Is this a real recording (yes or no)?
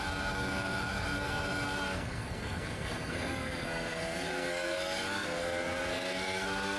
no